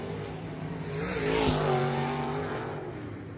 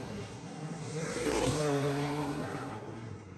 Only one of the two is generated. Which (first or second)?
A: second